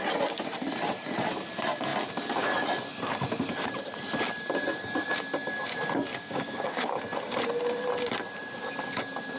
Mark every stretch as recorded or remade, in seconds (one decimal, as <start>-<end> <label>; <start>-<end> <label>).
0.0-6.1 recorded; 6.1-6.9 remade; 6.9-9.4 recorded